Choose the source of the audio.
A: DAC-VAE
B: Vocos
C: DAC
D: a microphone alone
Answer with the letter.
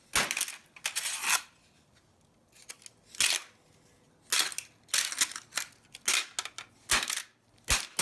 D